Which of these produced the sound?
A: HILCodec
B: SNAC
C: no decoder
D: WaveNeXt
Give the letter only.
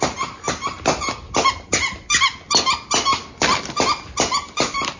C